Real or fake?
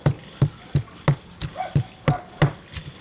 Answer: real